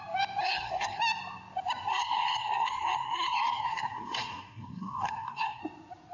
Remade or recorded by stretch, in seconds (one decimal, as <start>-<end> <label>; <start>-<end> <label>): 0.0-0.4 recorded; 0.4-1.0 remade; 1.0-1.9 recorded; 1.9-5.6 remade; 5.6-6.1 recorded